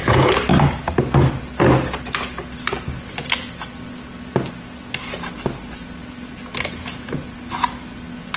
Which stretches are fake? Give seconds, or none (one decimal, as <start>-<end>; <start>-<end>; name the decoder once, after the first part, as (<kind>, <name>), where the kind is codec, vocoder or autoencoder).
5.0-6.0 (vocoder, BigVGAN v2); 7.6-8.4